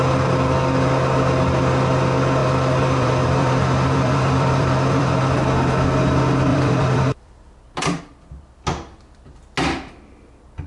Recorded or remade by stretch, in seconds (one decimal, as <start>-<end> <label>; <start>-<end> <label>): 0.0-2.4 recorded; 2.4-5.2 remade; 5.2-6.5 recorded; 6.5-8.0 remade; 8.0-10.7 recorded